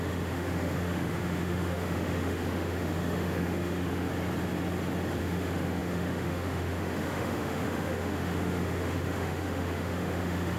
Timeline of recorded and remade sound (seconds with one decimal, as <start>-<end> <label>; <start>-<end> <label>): 0.0-4.1 remade; 4.1-5.2 recorded; 5.2-10.6 remade